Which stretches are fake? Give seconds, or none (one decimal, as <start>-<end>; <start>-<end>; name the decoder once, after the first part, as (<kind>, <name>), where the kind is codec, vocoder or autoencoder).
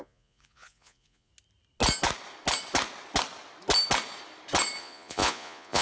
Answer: 0.0-1.3 (vocoder, Vocos); 4.8-5.8